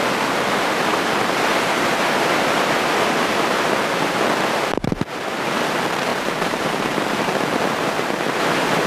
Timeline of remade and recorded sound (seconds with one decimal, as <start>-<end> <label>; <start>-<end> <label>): 0.0-6.1 recorded; 6.1-7.3 remade; 7.3-8.9 recorded